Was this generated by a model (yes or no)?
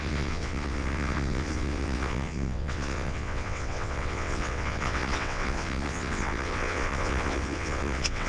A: yes